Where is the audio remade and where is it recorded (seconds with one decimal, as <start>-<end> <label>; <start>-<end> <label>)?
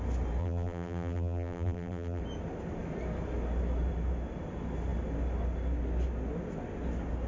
0.0-0.4 recorded; 0.4-2.2 remade; 2.2-7.3 recorded